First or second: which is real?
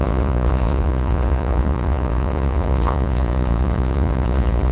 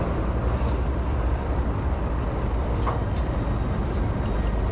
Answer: second